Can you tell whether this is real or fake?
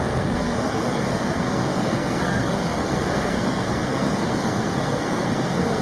fake